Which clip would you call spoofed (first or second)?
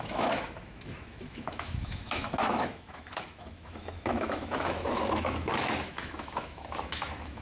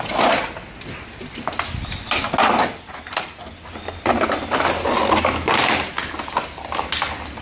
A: first